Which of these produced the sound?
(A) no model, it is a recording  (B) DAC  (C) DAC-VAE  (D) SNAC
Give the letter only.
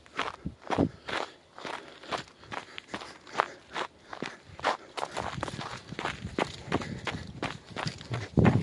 A